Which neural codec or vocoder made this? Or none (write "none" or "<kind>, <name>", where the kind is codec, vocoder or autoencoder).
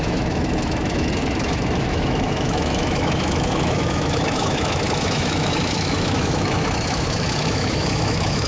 autoencoder, DAC-VAE